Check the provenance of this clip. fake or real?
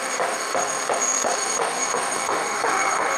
fake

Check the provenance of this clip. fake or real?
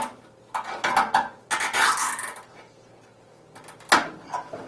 real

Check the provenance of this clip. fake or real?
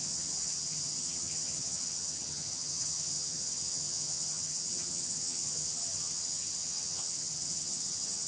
fake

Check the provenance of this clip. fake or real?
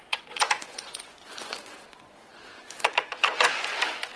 fake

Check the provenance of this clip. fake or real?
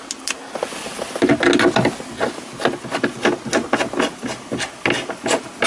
real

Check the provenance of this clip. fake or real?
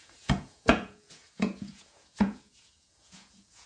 fake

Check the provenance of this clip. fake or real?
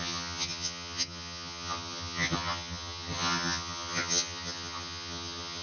fake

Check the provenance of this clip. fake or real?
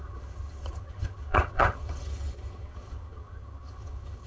fake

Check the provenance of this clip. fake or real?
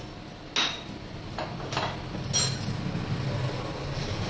real